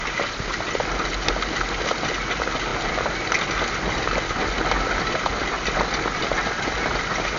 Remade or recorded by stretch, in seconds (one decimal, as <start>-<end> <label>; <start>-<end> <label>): 0.0-7.4 recorded